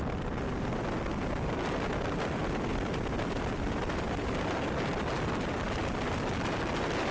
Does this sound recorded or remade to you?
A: recorded